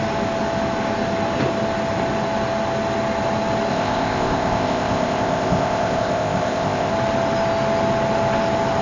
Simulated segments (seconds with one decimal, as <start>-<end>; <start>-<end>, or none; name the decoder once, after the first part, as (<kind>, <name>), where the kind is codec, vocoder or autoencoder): 3.7-6.9 (codec, ZipCodec)